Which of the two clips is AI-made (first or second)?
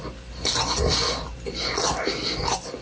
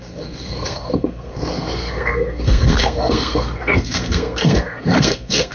second